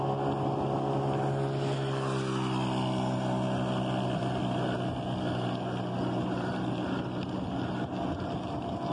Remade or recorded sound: recorded